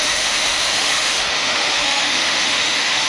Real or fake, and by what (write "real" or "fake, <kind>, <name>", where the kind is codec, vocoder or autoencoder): fake, autoencoder, DAC-VAE